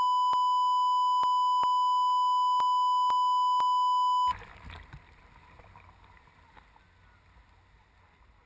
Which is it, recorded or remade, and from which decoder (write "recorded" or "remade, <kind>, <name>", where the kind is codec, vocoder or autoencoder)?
recorded